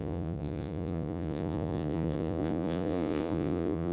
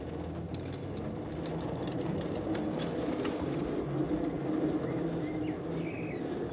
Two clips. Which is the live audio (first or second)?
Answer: second